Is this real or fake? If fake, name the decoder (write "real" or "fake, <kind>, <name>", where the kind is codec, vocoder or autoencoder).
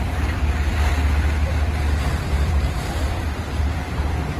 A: fake, vocoder, BigVGAN v2